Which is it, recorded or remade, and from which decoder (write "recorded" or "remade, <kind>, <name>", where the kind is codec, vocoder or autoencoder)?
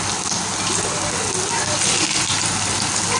recorded